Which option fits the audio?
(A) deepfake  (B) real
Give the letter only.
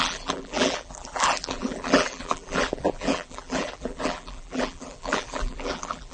A